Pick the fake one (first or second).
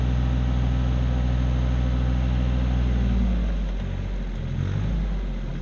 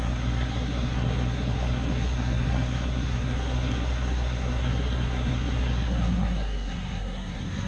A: second